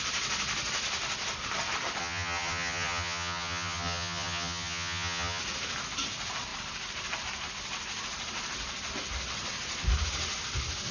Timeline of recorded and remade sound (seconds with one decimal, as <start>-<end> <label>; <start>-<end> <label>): 0.0-2.0 recorded; 2.0-5.4 remade; 5.4-10.9 recorded